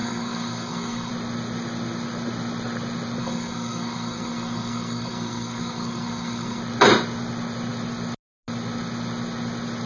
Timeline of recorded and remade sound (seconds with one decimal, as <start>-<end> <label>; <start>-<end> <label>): 0.0-1.1 remade; 1.1-3.2 recorded; 3.2-6.6 remade; 6.6-9.9 recorded